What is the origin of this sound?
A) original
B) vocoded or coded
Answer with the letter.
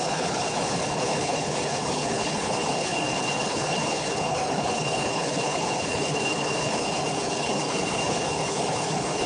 B